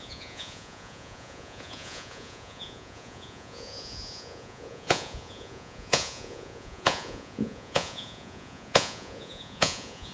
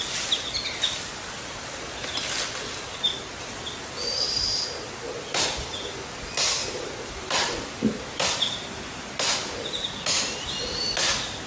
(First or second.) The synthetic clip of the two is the first